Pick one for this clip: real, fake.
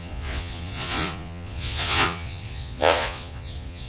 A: fake